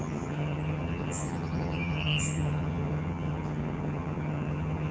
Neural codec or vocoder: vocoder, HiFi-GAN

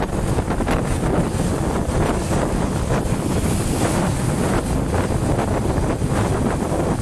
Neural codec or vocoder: none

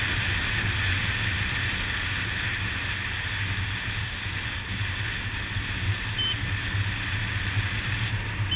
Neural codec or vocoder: none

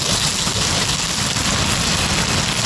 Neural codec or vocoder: none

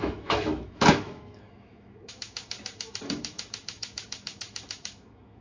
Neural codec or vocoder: autoencoder, DAC-VAE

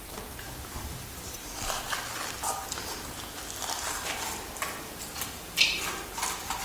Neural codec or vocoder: none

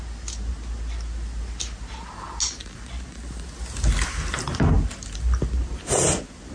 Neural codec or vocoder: none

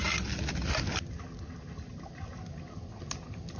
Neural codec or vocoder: none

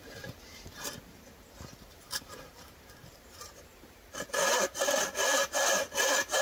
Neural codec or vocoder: vocoder, BigVGAN v2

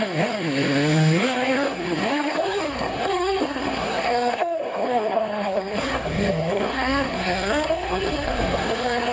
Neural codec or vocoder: codec, SNAC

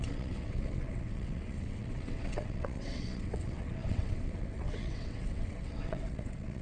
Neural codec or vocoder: vocoder, WaveNeXt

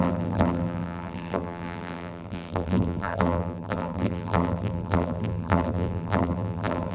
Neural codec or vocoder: vocoder, BigVGAN v2